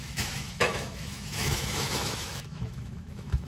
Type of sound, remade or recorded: remade